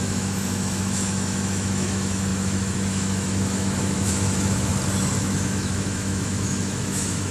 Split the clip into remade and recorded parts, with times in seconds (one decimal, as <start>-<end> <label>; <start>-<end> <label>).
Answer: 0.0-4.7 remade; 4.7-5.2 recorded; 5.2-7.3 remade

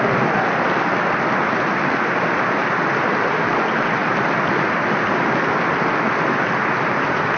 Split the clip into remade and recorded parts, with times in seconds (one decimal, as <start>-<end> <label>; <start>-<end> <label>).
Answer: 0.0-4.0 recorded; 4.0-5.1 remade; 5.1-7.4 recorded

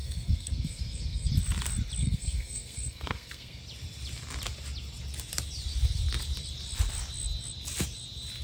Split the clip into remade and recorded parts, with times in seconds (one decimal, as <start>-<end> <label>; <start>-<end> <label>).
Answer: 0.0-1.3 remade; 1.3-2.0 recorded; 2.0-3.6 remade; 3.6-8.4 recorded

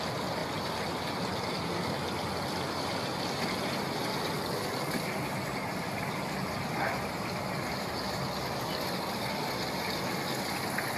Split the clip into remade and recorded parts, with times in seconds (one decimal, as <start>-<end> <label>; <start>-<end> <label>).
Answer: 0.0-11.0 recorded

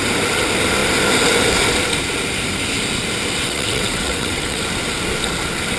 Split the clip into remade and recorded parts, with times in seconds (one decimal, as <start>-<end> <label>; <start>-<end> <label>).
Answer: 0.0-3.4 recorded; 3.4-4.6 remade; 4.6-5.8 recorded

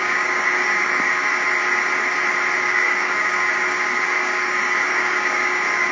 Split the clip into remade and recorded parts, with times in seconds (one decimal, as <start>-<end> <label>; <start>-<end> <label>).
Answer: 0.0-1.3 remade; 1.3-2.6 recorded; 2.6-5.9 remade